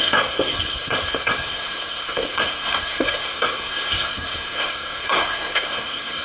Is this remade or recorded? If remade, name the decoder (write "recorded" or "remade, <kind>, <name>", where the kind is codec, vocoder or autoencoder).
remade, codec, SNAC